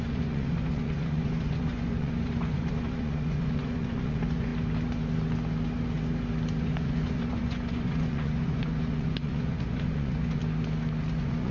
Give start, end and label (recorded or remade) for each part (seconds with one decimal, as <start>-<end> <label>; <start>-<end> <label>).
0.0-4.5 remade; 4.5-6.6 recorded; 6.6-10.4 remade; 10.4-11.1 recorded; 11.1-11.5 remade